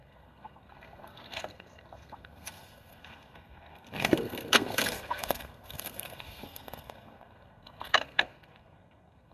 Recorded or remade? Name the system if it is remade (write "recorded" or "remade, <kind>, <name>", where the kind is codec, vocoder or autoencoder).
remade, codec, SNAC